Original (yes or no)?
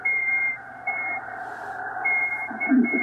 no